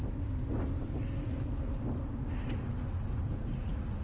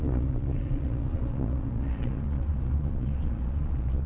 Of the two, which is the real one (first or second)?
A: first